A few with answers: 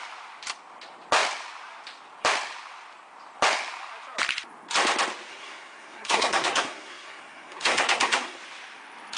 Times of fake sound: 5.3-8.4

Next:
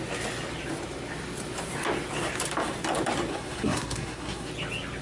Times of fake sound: 3.3-4.5

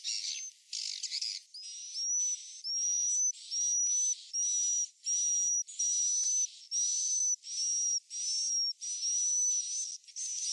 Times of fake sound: none

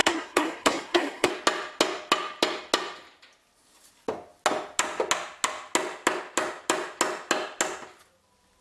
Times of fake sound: 0.0-1.3

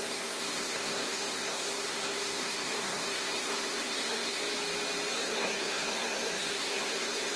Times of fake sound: 0.0-4.4; 5.1-7.4

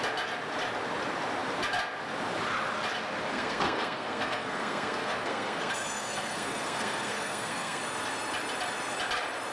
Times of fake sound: 3.3-7.8

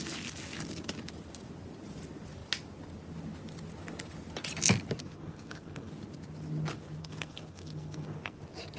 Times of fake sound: 5.0-5.9; 7.0-8.4